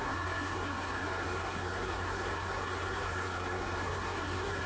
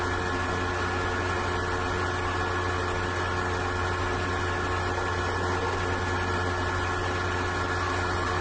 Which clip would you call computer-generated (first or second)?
first